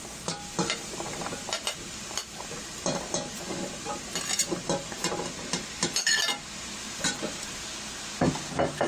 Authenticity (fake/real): real